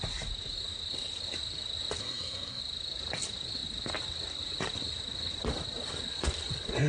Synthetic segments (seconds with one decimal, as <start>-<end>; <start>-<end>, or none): 2.0-2.6